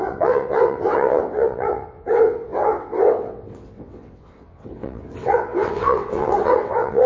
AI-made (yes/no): yes